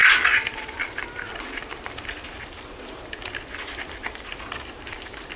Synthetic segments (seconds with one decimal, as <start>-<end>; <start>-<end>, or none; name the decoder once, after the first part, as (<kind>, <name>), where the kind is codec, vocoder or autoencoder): none